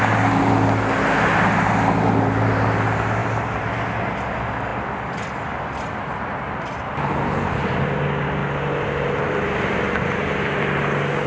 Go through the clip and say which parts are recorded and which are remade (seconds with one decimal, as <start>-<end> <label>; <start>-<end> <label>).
0.0-3.2 recorded; 3.2-3.7 remade; 3.7-11.3 recorded